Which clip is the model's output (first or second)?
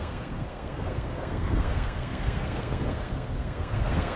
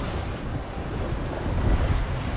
first